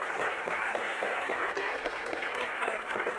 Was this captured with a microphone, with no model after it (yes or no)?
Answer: no